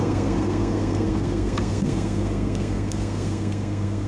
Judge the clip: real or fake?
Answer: fake